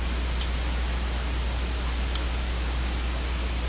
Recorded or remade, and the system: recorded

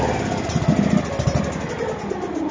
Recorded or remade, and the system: recorded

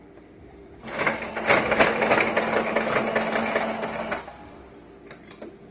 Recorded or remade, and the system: recorded